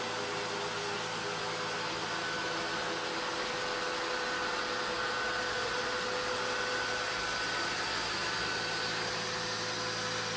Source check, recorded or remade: recorded